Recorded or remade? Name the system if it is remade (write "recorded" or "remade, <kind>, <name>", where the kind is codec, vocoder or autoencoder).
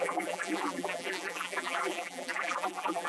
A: remade, vocoder, BigVGAN v2